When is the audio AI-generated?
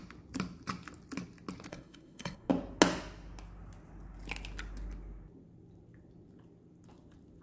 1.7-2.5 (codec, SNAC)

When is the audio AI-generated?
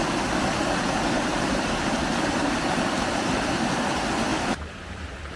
1.3-3.7 (vocoder, BigVGAN v2); 4.3-5.4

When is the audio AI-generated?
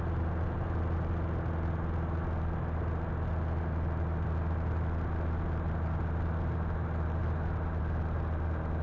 none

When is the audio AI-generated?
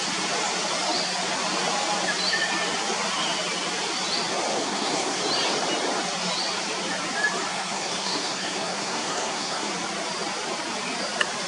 4.5-5.2 (codec, SNAC); 7.5-9.7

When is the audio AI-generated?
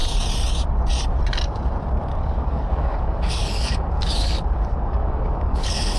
2.1-6.0 (codec, DAC)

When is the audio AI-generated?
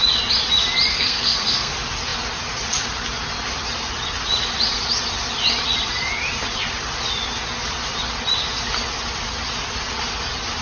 0.9-1.7 (codec, SNAC)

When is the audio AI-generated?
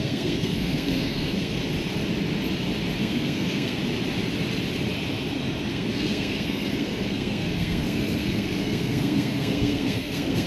0.0-1.6 (codec, SNAC); 3.0-3.8; 5.7-10.5